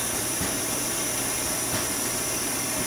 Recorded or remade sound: remade